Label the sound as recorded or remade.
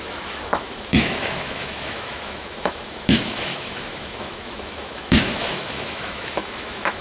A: remade